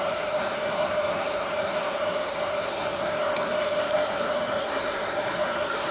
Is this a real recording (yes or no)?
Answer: no